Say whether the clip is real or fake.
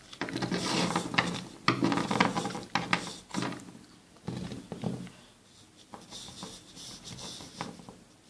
real